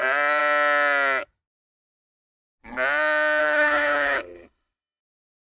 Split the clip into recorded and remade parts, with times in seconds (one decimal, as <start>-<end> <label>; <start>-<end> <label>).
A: 0.0-3.4 recorded; 3.4-5.0 remade; 5.0-5.4 recorded